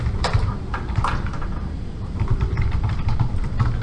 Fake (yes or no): yes